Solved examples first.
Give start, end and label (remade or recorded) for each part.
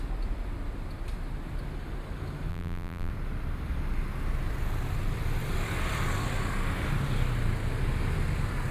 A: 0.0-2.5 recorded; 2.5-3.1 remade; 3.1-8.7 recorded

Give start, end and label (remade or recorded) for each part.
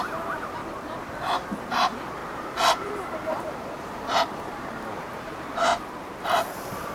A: 0.0-0.6 remade; 0.6-1.6 recorded; 1.6-5.7 remade; 5.7-6.2 recorded; 6.2-6.9 remade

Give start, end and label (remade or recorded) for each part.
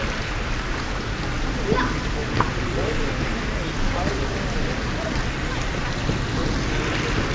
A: 0.0-7.3 recorded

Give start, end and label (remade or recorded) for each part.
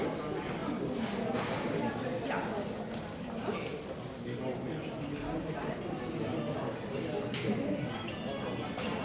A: 0.0-9.0 recorded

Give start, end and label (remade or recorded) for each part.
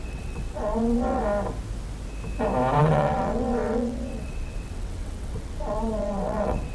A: 0.0-1.2 remade; 1.2-2.8 recorded; 2.8-6.7 remade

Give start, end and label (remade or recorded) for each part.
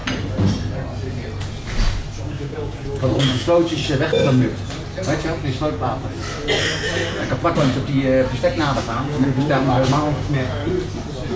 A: 0.0-2.2 recorded; 2.2-3.8 remade; 3.8-8.8 recorded; 8.8-10.6 remade; 10.6-11.4 recorded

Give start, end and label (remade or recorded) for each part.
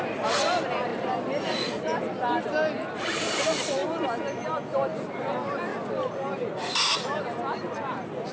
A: 0.0-8.3 recorded